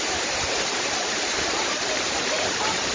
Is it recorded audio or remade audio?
remade